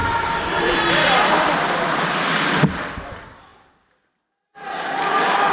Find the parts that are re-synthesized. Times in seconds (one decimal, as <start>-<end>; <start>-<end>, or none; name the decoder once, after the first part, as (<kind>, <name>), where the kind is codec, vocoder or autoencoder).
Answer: 0.0-3.5 (vocoder, BigVGAN v2)